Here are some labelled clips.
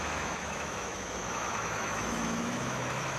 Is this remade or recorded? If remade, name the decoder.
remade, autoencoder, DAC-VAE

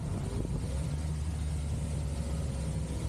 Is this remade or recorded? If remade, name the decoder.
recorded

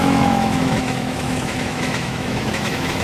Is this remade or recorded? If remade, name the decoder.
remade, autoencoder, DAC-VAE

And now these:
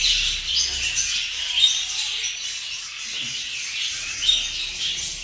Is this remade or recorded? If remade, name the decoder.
recorded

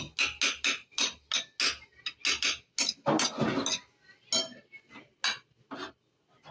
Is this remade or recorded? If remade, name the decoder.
recorded